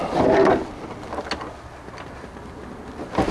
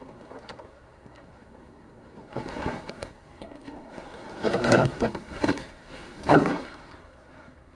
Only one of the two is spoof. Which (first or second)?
second